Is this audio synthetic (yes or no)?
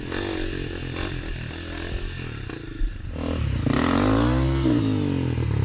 no